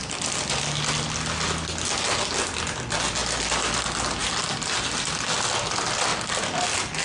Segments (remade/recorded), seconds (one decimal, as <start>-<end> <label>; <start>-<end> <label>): 0.0-7.0 recorded